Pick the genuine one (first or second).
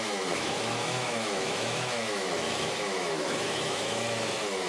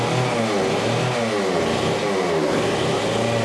second